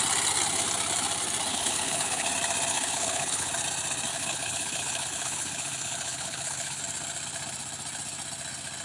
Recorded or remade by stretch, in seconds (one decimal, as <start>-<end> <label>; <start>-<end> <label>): 0.0-1.5 recorded; 1.5-2.3 remade; 2.3-2.7 recorded; 2.7-3.5 remade; 3.5-4.1 recorded; 4.1-6.8 remade; 6.8-8.8 recorded